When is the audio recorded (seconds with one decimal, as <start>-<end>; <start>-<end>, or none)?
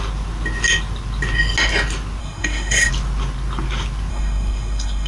0.0-2.2; 2.9-4.1